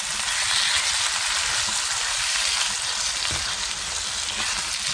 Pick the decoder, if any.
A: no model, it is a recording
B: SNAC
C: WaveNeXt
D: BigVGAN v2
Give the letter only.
A